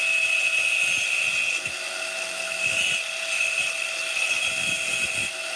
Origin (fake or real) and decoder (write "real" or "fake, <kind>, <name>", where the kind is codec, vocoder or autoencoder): real